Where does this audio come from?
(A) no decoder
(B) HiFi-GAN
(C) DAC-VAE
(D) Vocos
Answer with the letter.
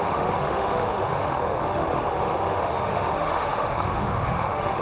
C